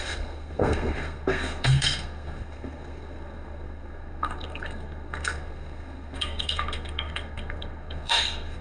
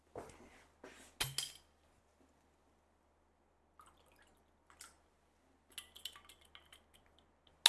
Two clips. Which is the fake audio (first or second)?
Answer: first